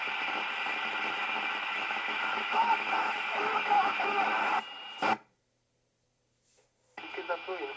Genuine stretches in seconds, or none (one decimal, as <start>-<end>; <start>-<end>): 0.0-1.2; 4.5-7.8